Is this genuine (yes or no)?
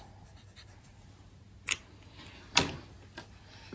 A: yes